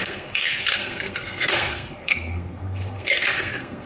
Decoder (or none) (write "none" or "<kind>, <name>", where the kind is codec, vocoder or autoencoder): codec, SNAC